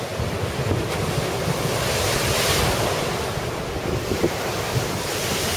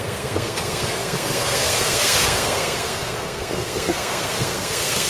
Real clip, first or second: first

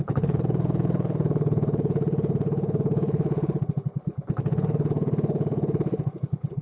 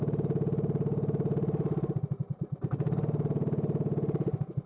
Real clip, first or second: second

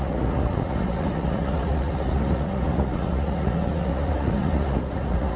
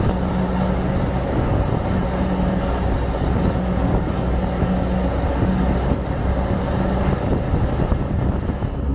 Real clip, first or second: second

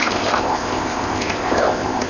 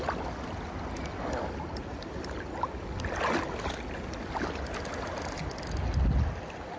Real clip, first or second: second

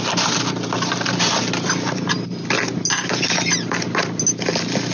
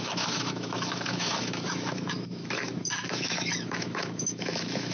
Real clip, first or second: first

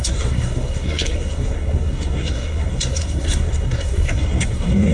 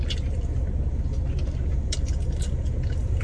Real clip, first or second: second